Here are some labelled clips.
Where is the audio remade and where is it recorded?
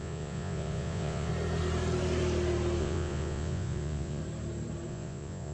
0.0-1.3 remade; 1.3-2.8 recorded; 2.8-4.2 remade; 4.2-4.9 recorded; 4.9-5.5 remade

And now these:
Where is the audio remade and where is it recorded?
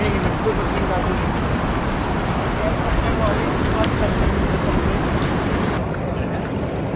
0.0-7.0 recorded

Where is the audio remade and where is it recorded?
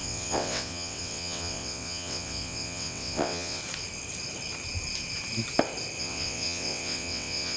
0.0-3.6 remade; 3.6-6.0 recorded; 6.0-7.6 remade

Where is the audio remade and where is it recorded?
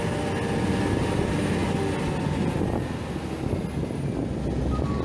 0.0-5.0 recorded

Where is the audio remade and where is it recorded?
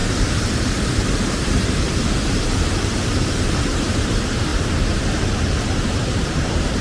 0.0-6.8 remade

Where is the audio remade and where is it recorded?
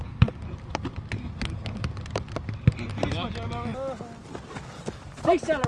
0.0-5.7 recorded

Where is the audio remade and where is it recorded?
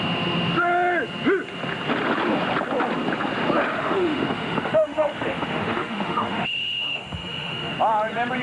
0.0-3.8 recorded; 3.8-7.7 remade; 7.7-8.4 recorded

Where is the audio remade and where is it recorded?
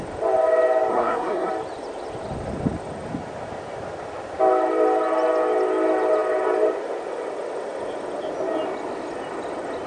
0.0-0.9 recorded; 0.9-1.5 remade; 1.5-9.9 recorded